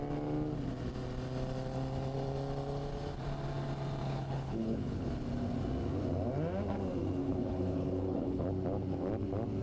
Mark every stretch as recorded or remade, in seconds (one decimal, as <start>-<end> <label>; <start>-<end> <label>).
0.0-4.0 recorded; 4.0-5.1 remade; 5.1-7.2 recorded; 7.2-8.5 remade; 8.5-9.6 recorded